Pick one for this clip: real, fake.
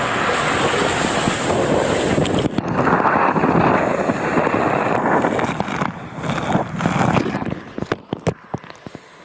real